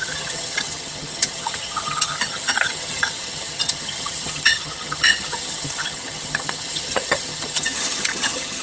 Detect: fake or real fake